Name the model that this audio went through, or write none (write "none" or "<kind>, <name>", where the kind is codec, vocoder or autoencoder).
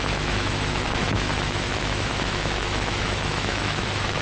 autoencoder, DAC-VAE